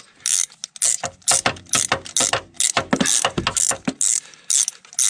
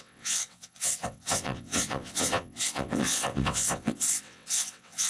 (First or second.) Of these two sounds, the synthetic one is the second